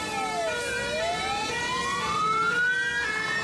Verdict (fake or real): real